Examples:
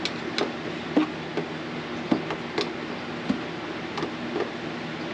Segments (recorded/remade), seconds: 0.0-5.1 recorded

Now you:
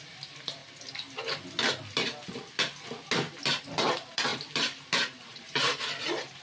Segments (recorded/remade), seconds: 0.0-0.6 remade; 0.6-3.9 recorded; 3.9-6.4 remade

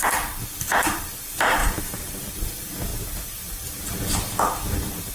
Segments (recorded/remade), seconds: 0.0-1.6 recorded; 1.6-2.2 remade; 2.2-5.1 recorded

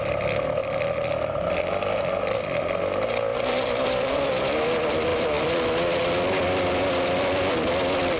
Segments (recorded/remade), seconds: 0.0-0.6 recorded; 0.6-1.1 remade; 1.1-3.3 recorded; 3.3-4.2 remade; 4.2-5.1 recorded; 5.1-8.2 remade